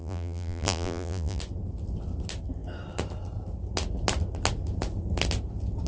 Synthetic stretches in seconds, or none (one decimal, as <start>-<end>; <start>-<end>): 0.0-1.4